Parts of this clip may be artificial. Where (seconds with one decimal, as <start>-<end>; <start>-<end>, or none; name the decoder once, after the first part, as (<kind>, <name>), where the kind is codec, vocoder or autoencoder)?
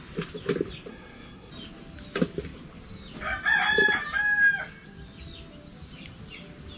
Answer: 0.9-1.5 (codec, SNAC)